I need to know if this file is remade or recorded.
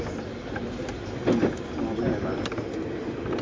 recorded